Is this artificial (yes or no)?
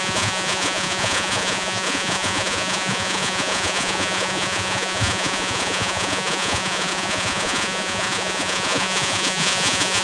yes